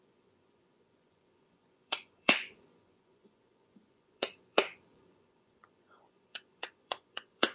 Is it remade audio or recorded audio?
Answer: remade